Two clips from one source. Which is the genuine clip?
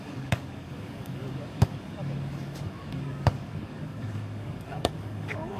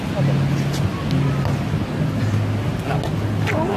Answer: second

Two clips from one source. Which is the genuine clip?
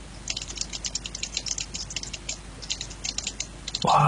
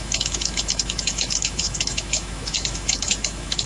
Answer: first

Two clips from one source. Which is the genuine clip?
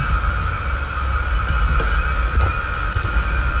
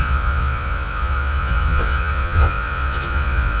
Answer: first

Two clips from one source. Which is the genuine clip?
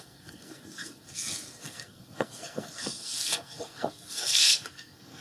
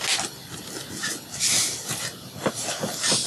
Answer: second